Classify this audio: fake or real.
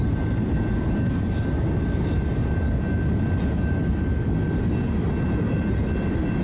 real